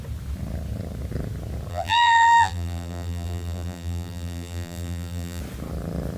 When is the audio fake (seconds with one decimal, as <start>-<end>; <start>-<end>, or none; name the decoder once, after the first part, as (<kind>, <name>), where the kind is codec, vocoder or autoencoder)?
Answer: 1.7-5.4 (vocoder, BigVGAN v2)